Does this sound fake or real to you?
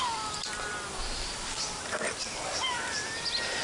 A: fake